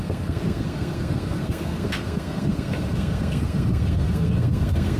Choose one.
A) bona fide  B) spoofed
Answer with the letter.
B